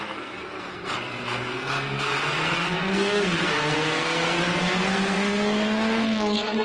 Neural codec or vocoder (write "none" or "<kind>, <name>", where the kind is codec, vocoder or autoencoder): codec, SNAC